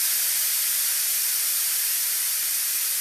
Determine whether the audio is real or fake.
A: fake